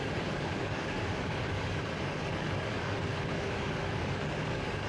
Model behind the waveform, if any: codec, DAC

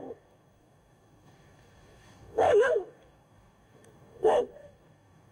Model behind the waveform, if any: codec, DAC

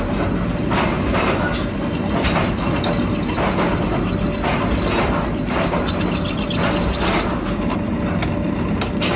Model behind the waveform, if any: none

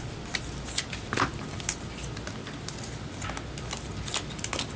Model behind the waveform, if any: none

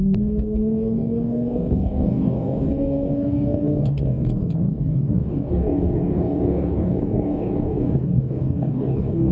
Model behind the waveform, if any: codec, DAC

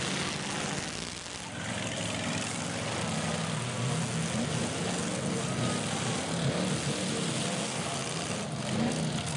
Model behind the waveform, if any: none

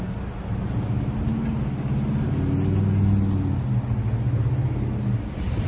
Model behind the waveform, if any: none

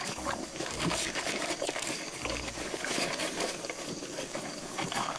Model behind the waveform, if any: codec, DAC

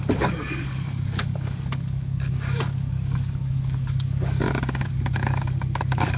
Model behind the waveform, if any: codec, DAC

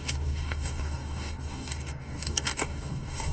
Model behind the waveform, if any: codec, DAC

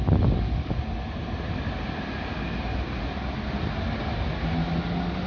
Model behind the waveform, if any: none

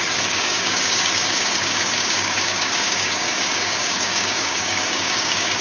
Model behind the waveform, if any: codec, DAC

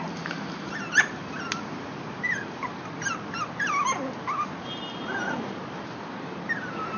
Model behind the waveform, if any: none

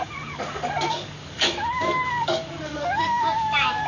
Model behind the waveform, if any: codec, DAC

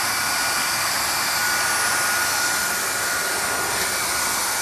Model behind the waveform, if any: none